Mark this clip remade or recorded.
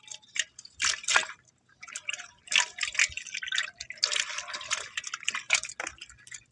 recorded